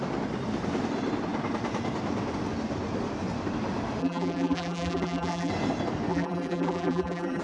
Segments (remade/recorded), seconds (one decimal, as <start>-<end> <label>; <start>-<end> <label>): 0.0-4.0 recorded; 4.0-5.5 remade; 5.5-6.1 recorded; 6.1-7.4 remade